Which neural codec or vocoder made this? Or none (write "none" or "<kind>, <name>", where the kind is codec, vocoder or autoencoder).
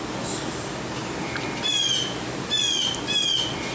none